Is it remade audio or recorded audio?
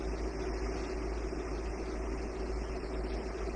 recorded